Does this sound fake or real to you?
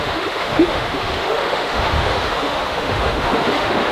fake